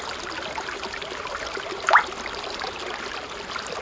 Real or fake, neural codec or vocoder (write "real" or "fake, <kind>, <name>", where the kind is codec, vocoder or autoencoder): real